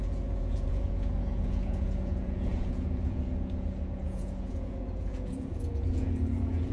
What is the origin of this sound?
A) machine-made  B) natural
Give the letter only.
A